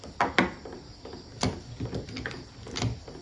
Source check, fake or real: real